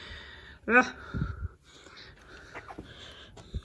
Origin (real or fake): real